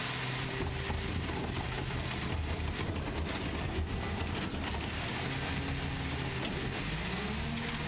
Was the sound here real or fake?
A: real